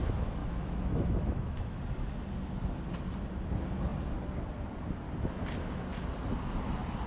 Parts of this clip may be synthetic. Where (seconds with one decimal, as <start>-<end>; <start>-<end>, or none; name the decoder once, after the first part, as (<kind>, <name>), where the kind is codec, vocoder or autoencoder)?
0.4-1.8 (autoencoder, DAC-VAE)